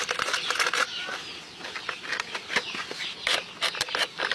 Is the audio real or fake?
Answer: real